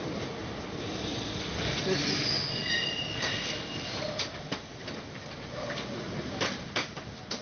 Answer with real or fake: real